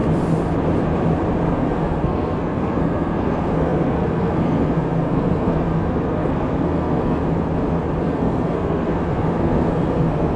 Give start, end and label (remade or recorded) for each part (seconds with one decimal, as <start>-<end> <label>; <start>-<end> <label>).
0.0-1.5 recorded; 1.5-7.2 remade; 7.2-8.0 recorded; 8.0-10.4 remade